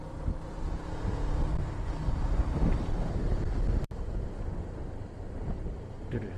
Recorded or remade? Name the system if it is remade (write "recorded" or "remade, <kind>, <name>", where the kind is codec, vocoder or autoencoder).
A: recorded